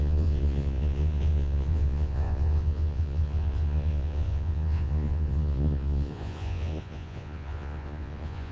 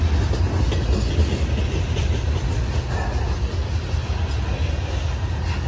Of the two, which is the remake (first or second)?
first